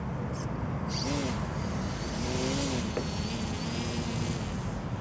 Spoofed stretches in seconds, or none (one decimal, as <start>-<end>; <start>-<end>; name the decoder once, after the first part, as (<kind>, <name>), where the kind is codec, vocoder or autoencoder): none